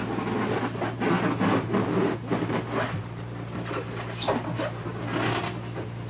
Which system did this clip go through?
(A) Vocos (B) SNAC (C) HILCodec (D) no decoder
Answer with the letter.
D